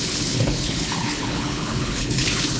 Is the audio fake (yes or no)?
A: yes